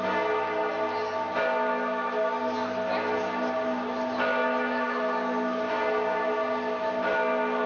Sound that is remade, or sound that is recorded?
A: recorded